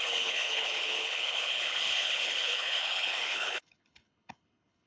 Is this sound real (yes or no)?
no